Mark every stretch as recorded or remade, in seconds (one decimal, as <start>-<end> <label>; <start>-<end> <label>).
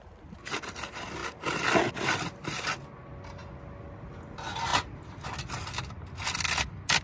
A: 0.0-7.0 recorded